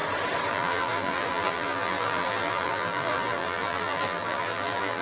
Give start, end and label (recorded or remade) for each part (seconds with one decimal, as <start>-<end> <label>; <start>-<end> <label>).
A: 0.0-0.5 recorded; 0.5-5.0 remade